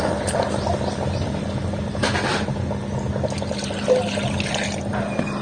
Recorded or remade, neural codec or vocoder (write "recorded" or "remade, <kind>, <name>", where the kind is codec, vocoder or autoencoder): recorded